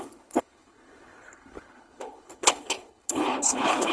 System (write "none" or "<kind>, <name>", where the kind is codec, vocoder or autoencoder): codec, HILCodec